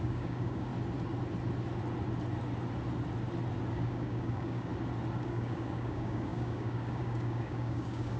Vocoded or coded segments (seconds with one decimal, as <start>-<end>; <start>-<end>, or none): 0.0-0.7; 3.7-4.7; 5.2-8.2